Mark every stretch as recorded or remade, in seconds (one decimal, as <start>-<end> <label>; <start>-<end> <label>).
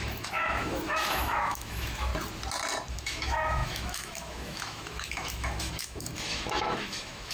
0.0-2.1 remade; 2.1-2.9 recorded; 2.9-7.3 remade